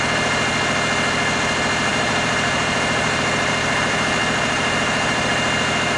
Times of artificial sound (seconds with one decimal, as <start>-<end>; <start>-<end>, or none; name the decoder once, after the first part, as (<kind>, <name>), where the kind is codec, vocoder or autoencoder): 1.9-5.3 (vocoder, BigVGAN v2)